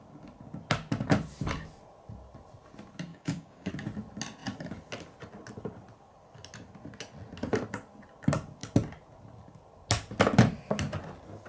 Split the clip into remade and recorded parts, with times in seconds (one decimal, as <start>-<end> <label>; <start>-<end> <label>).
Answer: 0.0-3.1 recorded; 3.1-3.7 remade; 3.7-11.5 recorded